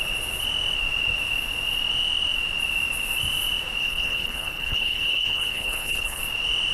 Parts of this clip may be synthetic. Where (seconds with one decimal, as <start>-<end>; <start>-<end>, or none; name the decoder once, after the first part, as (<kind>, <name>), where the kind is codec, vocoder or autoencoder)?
3.8-6.2 (codec, HILCodec)